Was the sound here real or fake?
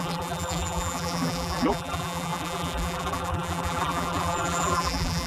fake